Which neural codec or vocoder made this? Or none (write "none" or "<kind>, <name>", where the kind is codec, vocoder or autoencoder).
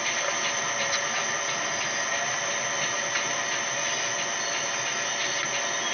none